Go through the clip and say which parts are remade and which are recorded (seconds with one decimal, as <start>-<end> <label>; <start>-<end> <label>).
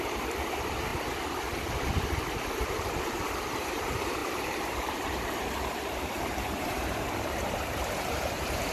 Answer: 0.0-0.9 remade; 0.9-2.4 recorded; 2.4-8.7 remade